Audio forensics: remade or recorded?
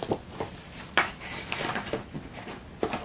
recorded